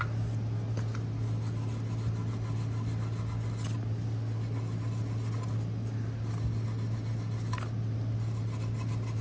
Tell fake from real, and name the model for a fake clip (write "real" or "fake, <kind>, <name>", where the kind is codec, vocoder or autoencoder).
real